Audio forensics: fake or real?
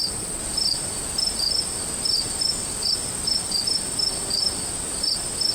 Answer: real